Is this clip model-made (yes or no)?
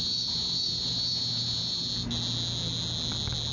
no